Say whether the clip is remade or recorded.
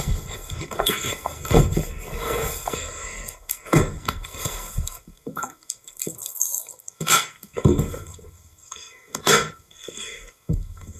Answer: remade